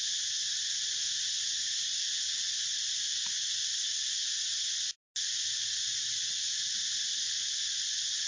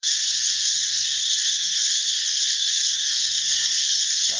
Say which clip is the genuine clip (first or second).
first